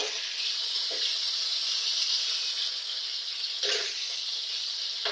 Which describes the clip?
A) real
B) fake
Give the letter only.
A